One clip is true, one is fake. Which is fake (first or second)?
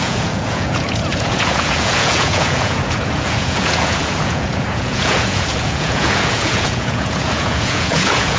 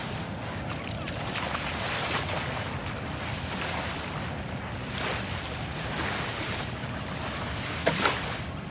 first